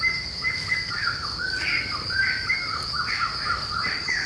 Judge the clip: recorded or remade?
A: remade